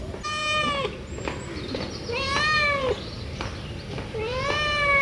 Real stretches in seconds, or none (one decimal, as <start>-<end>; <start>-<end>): 0.0-5.0